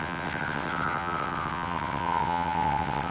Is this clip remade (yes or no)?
yes